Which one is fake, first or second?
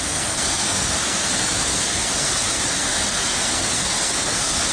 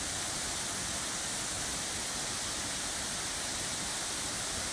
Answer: first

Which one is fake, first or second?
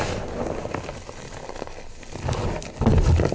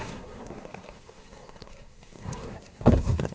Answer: second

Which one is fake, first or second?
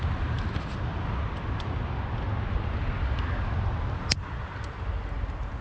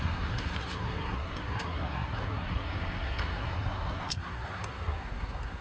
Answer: second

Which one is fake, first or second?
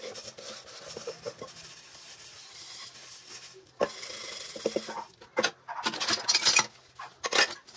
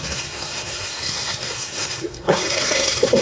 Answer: second